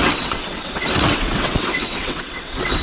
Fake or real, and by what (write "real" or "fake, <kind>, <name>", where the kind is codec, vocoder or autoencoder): fake, vocoder, WaveNeXt